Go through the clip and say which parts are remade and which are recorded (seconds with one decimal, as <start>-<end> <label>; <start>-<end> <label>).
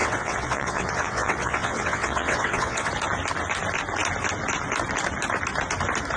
0.0-2.9 remade; 2.9-6.2 recorded